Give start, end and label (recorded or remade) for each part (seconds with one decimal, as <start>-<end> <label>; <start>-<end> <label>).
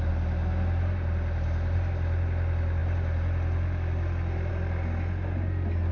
0.0-5.9 recorded